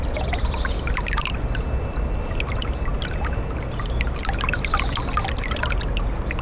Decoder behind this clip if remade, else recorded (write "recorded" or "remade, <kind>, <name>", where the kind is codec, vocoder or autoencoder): recorded